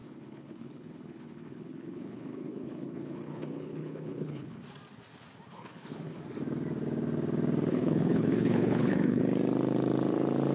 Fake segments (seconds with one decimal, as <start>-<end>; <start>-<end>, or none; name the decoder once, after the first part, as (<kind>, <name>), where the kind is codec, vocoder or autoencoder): 0.0-4.6 (codec, HILCodec); 5.5-6.2; 7.7-9.2